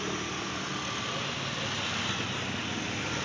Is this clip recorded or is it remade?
recorded